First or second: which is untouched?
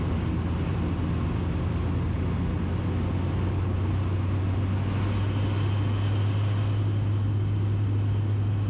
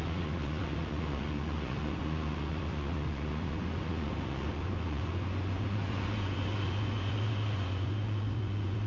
first